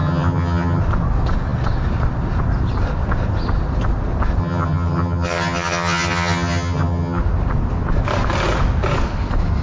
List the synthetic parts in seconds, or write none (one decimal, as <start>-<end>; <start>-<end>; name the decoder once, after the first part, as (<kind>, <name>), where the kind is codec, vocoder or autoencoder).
0.0-0.8 (vocoder, HiFi-GAN); 4.4-7.2